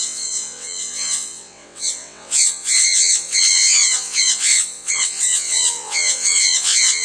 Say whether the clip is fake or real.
fake